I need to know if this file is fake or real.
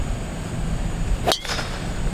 real